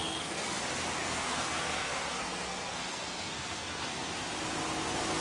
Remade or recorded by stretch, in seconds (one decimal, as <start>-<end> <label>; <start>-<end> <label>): 0.0-0.6 remade; 0.6-1.0 recorded; 1.0-4.1 remade; 4.1-5.2 recorded